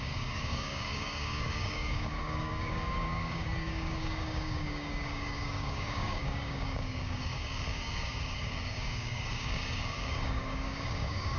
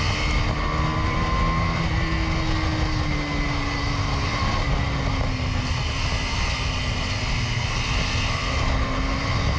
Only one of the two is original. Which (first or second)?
second